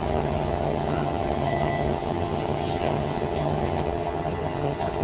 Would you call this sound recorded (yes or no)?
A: no